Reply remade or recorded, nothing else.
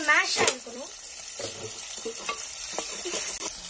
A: remade